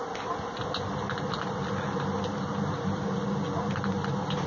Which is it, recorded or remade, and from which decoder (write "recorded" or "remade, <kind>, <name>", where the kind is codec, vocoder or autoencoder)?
recorded